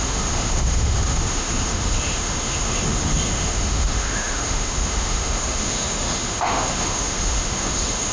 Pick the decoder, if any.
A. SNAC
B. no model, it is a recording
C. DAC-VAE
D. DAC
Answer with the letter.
C